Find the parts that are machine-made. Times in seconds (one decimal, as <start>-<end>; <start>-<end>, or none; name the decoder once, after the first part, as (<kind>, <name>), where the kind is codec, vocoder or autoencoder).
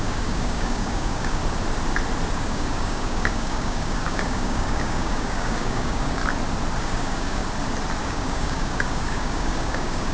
0.0-1.4 (codec, DAC); 2.3-6.2; 6.8-7.4; 8.0-10.1